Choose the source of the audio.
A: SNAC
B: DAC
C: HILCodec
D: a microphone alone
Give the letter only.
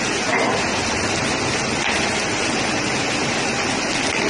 D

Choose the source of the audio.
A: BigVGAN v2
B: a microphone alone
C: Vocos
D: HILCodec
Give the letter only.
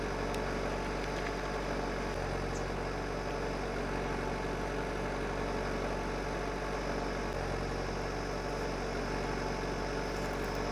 B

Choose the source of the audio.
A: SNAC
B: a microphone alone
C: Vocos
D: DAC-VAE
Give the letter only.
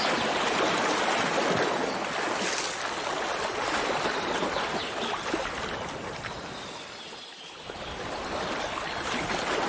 B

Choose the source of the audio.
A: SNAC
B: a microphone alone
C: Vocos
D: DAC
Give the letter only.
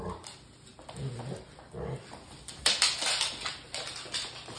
B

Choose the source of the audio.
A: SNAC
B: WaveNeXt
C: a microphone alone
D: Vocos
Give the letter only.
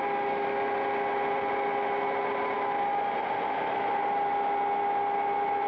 C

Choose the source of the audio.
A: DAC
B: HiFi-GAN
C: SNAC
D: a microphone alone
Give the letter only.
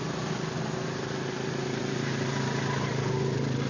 D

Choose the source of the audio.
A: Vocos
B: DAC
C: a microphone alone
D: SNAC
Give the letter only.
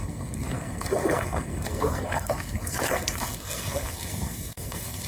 D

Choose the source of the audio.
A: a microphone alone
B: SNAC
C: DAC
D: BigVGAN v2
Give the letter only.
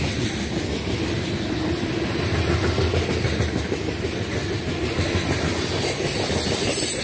A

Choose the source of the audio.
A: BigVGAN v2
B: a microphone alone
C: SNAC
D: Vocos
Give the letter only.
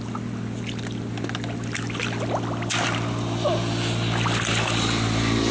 B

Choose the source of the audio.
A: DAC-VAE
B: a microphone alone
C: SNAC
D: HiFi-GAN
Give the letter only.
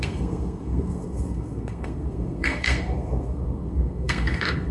C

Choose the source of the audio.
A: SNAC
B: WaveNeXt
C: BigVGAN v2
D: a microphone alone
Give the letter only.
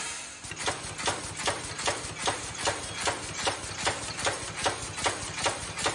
D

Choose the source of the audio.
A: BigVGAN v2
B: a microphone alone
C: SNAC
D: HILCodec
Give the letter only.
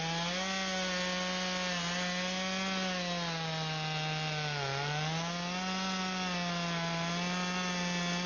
B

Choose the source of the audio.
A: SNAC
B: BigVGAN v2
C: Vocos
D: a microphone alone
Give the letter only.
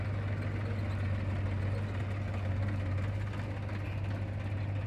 D